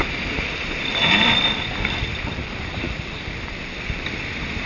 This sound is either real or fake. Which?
fake